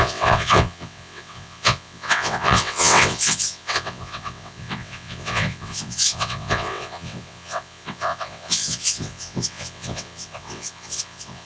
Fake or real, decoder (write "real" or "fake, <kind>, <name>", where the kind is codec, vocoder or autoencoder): fake, vocoder, WaveNeXt